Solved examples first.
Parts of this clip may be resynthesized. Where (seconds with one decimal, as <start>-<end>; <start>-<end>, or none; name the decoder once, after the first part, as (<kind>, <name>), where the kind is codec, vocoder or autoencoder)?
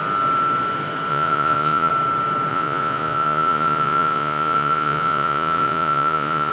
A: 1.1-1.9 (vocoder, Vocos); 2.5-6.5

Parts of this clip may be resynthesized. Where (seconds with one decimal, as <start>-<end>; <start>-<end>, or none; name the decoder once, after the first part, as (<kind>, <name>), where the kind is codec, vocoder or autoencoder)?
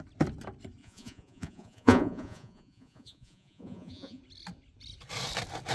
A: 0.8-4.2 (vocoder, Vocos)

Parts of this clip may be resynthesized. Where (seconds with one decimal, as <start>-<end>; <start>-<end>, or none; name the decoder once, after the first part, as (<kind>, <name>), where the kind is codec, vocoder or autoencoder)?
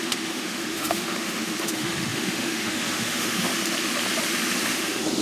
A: 0.0-3.5 (autoencoder, DAC-VAE); 4.7-5.2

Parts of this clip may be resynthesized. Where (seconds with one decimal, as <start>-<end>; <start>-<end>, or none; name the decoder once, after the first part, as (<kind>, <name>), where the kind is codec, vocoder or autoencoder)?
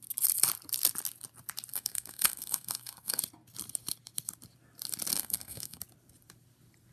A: 1.7-3.2 (codec, SNAC); 5.1-5.8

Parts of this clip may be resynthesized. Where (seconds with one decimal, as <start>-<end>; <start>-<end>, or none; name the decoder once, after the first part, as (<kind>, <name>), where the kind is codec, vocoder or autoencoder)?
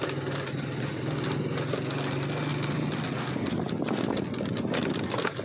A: none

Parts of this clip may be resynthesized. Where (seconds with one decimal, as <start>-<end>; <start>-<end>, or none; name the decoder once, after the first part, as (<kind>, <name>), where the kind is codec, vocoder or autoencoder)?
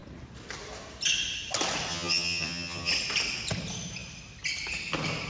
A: 1.9-2.9 (vocoder, HiFi-GAN)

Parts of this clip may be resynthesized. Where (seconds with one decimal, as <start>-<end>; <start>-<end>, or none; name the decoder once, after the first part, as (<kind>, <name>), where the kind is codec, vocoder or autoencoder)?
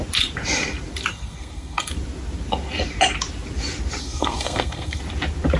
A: 1.1-1.9 (codec, SNAC); 4.0-5.0